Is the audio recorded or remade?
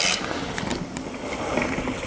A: recorded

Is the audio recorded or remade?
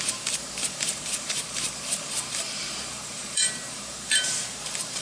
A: remade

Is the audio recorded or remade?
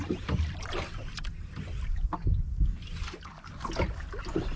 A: recorded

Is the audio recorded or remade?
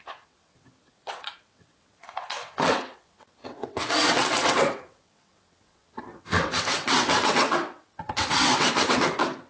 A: remade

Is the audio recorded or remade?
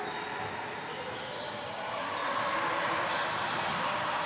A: recorded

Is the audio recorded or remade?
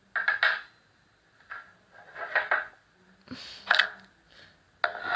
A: recorded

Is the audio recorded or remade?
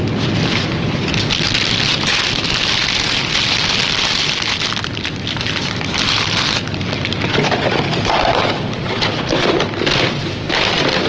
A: recorded